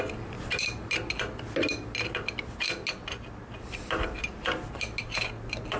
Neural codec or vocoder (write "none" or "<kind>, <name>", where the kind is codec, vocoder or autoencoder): none